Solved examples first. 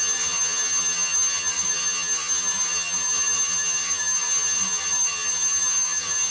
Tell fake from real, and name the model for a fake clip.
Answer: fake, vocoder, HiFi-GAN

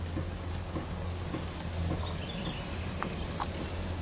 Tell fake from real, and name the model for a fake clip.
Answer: real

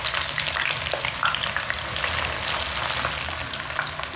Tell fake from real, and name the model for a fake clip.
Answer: real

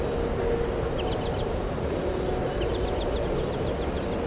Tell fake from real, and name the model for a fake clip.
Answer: real